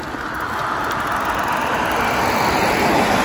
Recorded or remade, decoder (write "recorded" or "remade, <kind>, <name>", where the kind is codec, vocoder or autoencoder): recorded